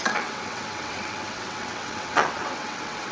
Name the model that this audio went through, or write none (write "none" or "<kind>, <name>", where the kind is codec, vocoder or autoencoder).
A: vocoder, WaveNeXt